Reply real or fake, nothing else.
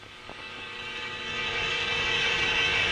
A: fake